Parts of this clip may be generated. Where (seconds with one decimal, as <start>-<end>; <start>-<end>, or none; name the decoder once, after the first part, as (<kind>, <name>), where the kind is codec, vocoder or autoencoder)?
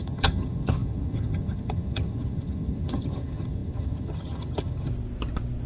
0.0-4.9 (vocoder, HiFi-GAN)